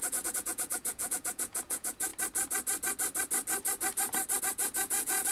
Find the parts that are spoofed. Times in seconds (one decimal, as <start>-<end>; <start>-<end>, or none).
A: 0.0-2.1; 4.4-5.3